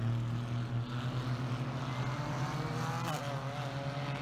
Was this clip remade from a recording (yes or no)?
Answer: no